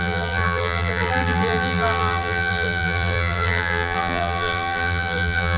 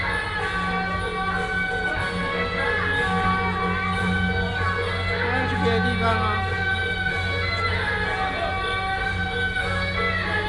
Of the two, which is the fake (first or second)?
first